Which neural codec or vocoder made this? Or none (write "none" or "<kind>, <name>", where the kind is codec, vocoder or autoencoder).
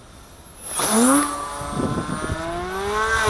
none